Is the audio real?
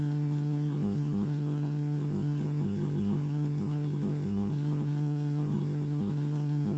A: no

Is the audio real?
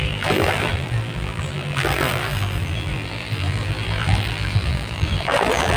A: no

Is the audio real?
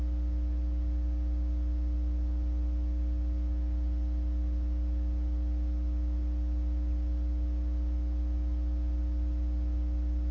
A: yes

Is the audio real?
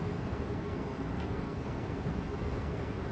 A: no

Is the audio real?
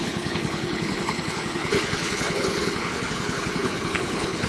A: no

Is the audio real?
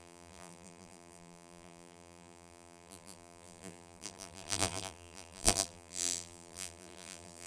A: no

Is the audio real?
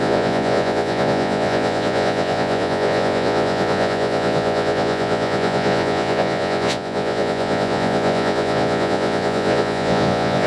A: no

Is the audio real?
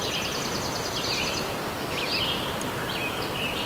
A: yes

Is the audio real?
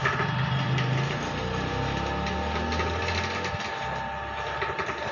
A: yes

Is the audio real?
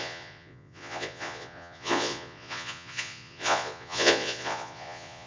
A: no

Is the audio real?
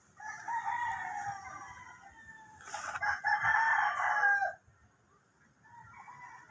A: yes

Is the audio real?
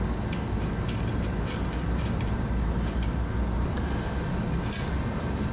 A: yes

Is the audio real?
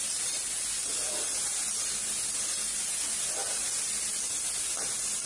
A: yes